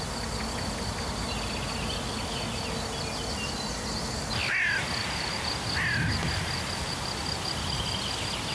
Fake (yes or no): no